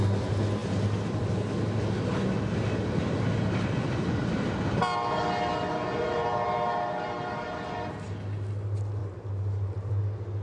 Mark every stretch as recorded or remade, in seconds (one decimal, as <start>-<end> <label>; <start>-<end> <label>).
0.0-5.9 recorded; 5.9-7.6 remade; 7.6-9.0 recorded; 9.0-9.9 remade; 9.9-10.4 recorded